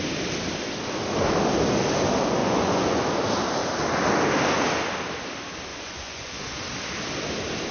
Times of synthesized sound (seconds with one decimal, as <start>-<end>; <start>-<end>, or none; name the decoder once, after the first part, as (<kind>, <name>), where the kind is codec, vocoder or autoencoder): 2.4-3.0 (vocoder, Vocos); 5.7-6.4